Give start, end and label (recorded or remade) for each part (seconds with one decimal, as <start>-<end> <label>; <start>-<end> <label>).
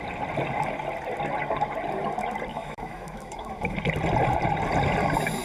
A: 0.0-2.5 recorded; 2.5-3.8 remade; 3.8-5.4 recorded